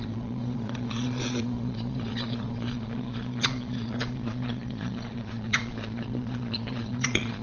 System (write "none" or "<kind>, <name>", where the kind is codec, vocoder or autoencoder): vocoder, Vocos